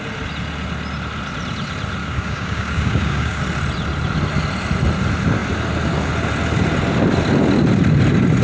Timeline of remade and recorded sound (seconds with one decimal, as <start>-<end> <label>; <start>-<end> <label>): 0.0-2.0 recorded; 2.0-3.4 remade; 3.4-8.4 recorded